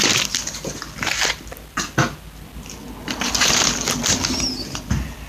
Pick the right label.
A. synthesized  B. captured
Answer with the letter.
B